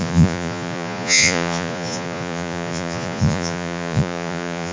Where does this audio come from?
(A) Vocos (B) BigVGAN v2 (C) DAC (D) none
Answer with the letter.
A